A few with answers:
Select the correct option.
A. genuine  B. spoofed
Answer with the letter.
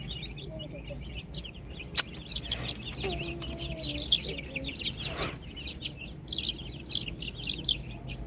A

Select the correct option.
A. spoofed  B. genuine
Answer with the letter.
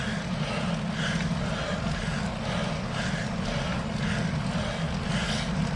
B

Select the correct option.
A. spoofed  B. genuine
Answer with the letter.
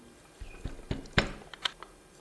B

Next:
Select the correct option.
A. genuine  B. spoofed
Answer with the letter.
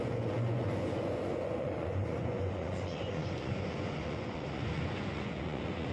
B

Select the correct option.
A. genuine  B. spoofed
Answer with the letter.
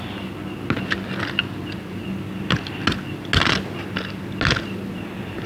A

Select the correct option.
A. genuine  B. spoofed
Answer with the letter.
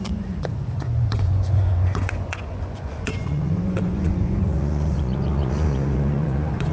B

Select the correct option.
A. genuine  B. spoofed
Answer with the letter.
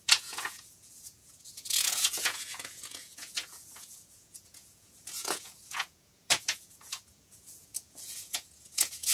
B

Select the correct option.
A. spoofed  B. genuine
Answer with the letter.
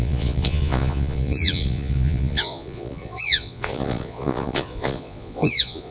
A